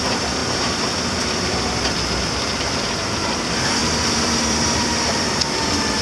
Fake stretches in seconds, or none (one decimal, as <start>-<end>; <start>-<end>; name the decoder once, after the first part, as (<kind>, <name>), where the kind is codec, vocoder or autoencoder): 0.4-3.4 (vocoder, BigVGAN v2); 3.8-5.2

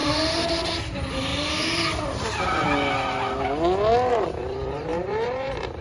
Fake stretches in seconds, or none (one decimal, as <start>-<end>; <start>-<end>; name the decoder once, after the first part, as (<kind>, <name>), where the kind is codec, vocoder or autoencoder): 0.0-1.3 (vocoder, BigVGAN v2); 4.1-5.8

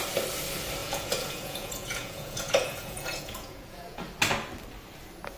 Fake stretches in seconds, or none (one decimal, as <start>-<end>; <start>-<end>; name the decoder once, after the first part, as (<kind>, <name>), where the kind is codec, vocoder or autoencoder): 0.8-4.0 (vocoder, Vocos)

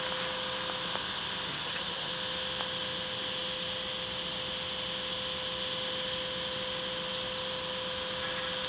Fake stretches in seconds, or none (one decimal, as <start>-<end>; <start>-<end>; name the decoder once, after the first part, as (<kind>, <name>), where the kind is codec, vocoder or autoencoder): 1.5-2.1 (vocoder, HiFi-GAN)